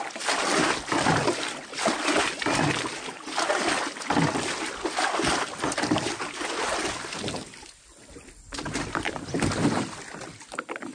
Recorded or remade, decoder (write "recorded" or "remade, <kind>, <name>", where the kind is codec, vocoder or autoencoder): recorded